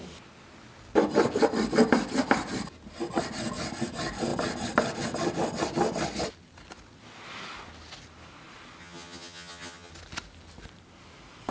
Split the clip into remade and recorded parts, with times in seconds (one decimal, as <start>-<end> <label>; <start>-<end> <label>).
0.0-8.8 recorded; 8.8-9.9 remade; 9.9-11.5 recorded